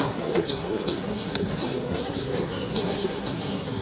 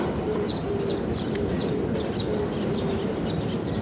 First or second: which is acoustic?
second